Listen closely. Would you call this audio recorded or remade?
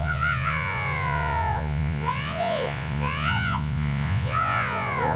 remade